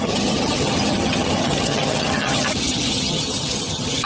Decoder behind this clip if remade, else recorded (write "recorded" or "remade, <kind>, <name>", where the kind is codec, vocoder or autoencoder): remade, vocoder, HiFi-GAN